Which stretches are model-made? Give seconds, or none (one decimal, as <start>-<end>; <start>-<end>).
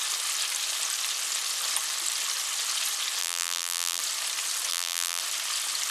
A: 3.2-4.0; 4.7-5.2